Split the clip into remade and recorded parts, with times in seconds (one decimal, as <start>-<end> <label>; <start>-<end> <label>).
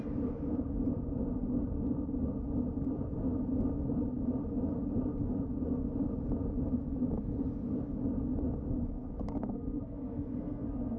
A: 0.0-9.4 recorded; 9.4-11.0 remade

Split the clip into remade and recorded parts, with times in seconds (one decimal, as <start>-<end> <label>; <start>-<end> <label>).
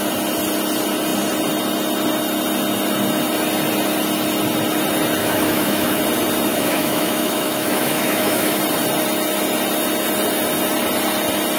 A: 0.0-5.2 recorded; 5.2-6.0 remade; 6.0-6.5 recorded; 6.5-8.6 remade; 8.6-11.6 recorded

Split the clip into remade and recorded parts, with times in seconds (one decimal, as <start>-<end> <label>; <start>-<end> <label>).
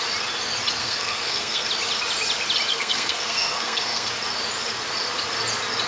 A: 0.0-0.8 recorded; 0.8-1.7 remade; 1.7-2.7 recorded; 2.7-4.1 remade; 4.1-5.9 recorded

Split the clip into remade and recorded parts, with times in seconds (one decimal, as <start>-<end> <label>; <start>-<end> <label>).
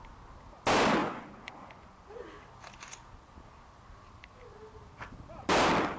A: 0.0-1.0 recorded; 1.0-2.1 remade; 2.1-6.0 recorded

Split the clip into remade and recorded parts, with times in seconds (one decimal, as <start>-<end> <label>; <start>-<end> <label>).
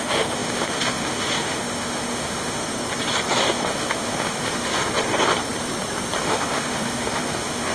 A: 0.0-2.7 remade; 2.7-3.4 recorded; 3.4-4.8 remade; 4.8-6.2 recorded; 6.2-7.7 remade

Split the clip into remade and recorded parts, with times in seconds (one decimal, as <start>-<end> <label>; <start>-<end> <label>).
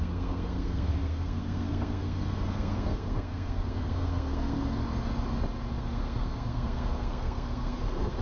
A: 0.0-4.8 remade; 4.8-5.8 recorded; 5.8-8.2 remade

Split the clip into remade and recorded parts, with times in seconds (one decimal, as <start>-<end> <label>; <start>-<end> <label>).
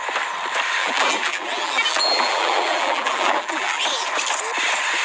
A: 0.0-0.8 recorded; 0.8-3.8 remade; 3.8-5.0 recorded